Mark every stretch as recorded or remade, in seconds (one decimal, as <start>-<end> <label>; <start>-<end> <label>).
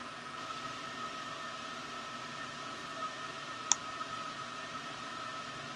0.0-5.8 recorded